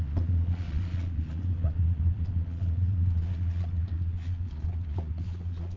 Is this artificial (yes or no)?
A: yes